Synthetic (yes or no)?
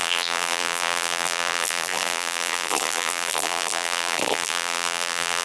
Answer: yes